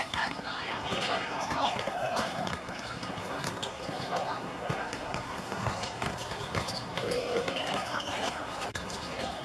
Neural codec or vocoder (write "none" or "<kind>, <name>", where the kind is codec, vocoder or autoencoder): codec, SNAC